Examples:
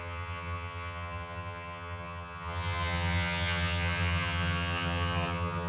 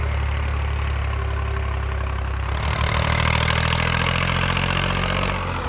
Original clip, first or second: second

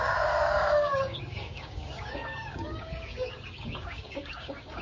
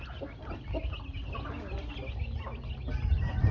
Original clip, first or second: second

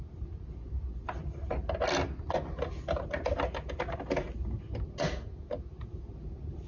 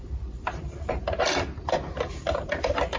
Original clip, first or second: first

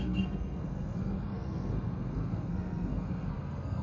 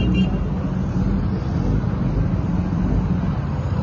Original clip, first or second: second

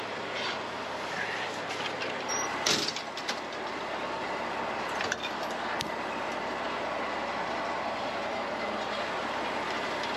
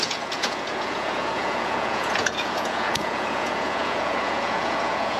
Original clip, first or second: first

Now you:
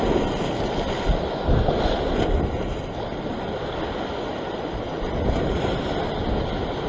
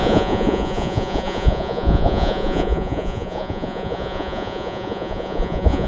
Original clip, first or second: first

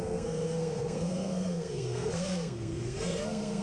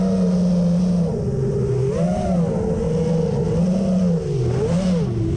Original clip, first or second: second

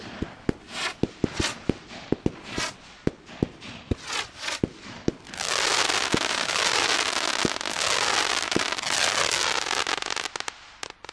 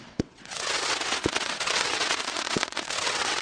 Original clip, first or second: first